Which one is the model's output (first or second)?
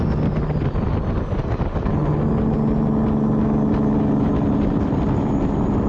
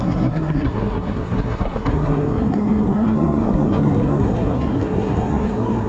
second